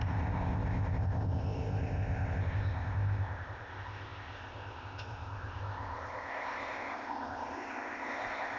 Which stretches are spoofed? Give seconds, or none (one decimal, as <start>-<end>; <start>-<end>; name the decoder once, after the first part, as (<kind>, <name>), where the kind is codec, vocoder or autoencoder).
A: 0.0-8.6 (codec, ZipCodec)